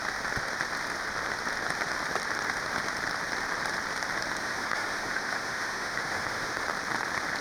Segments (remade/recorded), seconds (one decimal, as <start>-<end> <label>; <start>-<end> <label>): 0.0-4.4 recorded; 4.4-6.7 remade; 6.7-7.4 recorded